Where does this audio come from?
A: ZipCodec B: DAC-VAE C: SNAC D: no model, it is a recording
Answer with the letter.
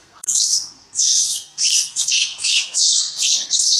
C